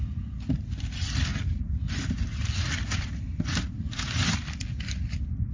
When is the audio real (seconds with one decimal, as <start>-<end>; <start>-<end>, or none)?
0.0-5.5